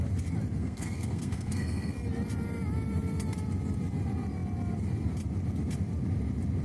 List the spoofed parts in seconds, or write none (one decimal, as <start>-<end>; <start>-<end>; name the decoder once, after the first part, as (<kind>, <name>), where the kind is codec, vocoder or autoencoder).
0.6-2.0 (codec, SNAC)